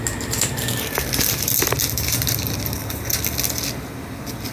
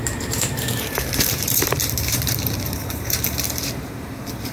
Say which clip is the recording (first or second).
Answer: first